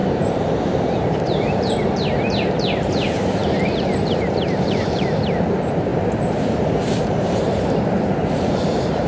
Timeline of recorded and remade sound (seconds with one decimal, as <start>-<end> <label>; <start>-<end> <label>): 0.0-9.1 remade